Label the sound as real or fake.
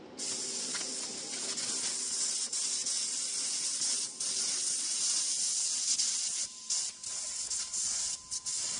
real